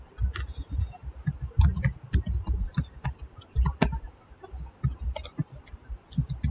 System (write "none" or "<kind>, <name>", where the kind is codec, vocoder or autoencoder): none